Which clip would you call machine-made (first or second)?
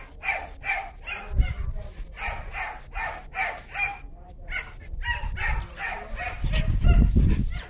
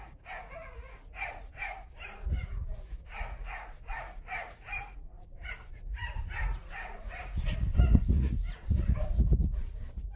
second